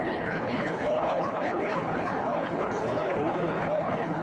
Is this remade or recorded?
remade